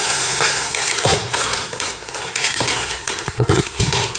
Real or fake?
fake